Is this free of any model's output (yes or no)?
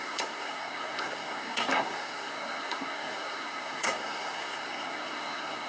no